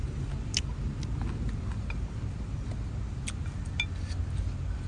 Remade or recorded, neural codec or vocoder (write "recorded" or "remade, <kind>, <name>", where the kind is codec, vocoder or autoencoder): recorded